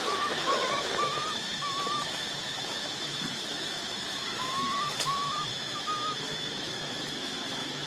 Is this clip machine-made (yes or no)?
yes